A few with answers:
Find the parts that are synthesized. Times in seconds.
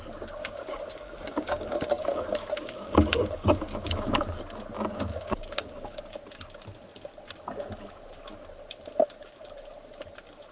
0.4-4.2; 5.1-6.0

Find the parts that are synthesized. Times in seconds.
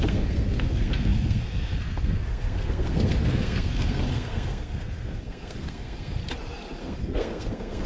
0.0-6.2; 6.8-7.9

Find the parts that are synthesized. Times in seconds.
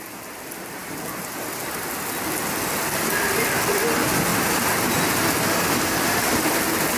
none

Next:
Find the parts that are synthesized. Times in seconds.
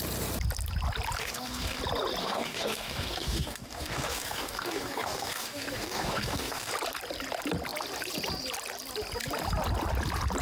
1.2-1.8; 2.2-6.7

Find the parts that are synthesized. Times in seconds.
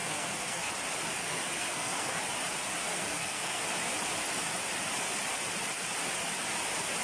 0.0-0.7; 1.2-2.2; 2.8-3.6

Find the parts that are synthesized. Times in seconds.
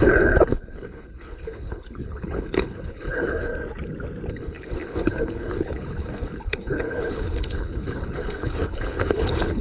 0.0-3.5; 4.3-9.6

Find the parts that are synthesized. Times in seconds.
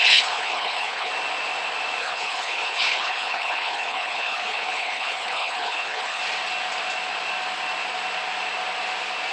0.0-1.1; 2.0-6.2